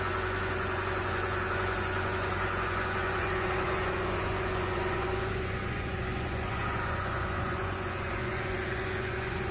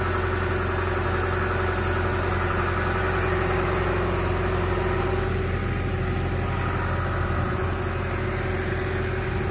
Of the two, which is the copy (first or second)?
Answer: first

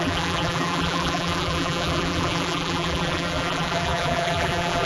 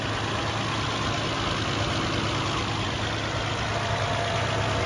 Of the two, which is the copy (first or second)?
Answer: first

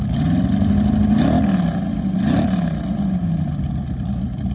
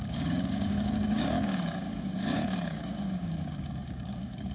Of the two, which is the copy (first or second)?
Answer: second